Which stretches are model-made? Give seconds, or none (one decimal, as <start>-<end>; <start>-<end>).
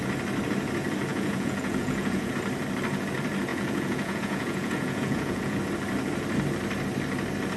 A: 1.1-2.3; 3.5-5.6